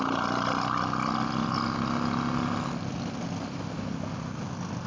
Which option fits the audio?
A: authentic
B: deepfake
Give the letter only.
A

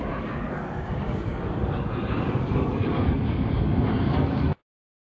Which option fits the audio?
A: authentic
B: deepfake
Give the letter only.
B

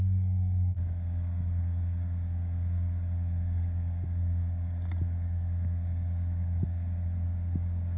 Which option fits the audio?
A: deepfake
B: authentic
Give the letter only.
A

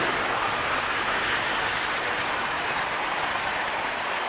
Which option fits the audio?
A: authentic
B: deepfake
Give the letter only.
A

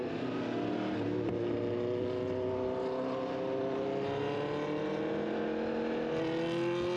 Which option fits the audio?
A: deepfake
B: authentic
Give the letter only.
B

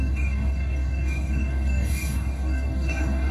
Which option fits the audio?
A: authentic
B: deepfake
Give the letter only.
B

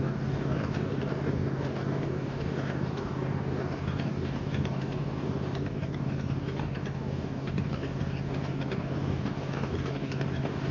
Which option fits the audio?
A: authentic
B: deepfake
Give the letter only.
B